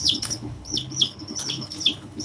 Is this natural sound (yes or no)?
no